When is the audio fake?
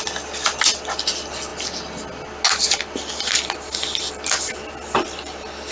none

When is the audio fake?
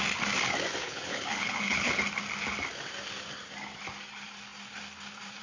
0.8-2.0 (codec, HILCodec)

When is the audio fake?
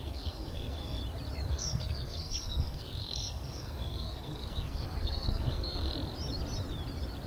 0.0-1.0 (codec, SNAC); 1.5-5.9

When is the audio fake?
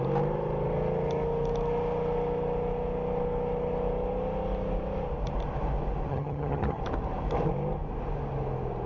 6.1-6.8 (vocoder, HiFi-GAN)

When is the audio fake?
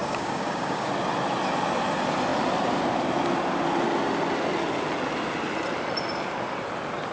0.0-0.9 (codec, DAC)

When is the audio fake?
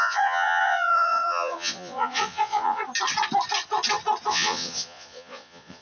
0.0-2.8 (vocoder, Vocos); 4.3-5.8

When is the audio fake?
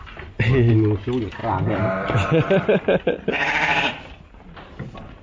1.4-4.1 (vocoder, BigVGAN v2)